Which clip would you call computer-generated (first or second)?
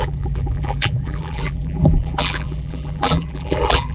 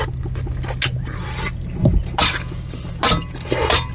first